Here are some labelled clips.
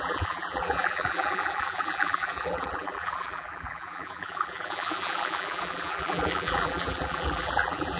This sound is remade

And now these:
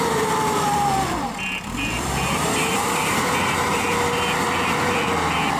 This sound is remade